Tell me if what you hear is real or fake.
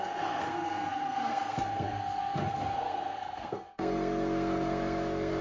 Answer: fake